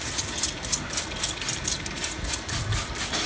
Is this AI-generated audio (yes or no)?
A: no